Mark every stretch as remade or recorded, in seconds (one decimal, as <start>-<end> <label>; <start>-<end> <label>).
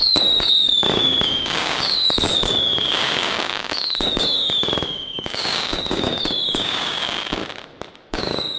0.0-7.4 remade; 7.4-8.1 recorded; 8.1-8.6 remade